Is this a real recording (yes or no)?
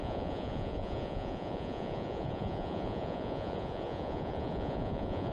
no